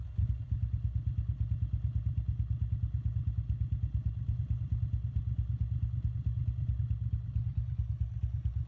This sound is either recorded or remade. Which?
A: recorded